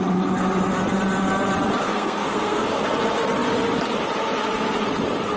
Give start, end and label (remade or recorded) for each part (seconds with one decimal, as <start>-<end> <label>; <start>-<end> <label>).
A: 0.0-1.8 recorded; 1.8-2.8 remade; 2.8-5.4 recorded